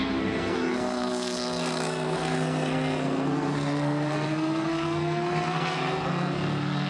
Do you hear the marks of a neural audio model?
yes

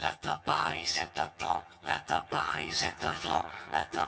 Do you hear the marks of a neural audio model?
yes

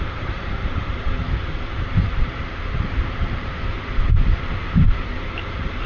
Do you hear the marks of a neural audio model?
yes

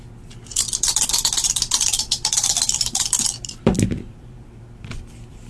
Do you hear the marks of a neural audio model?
yes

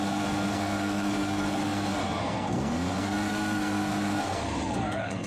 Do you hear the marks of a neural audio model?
yes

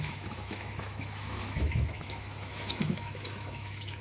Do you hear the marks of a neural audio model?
yes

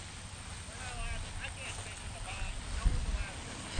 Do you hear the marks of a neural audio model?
no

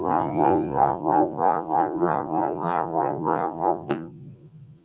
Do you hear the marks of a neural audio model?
yes